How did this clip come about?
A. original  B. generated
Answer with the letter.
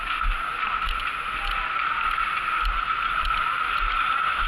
A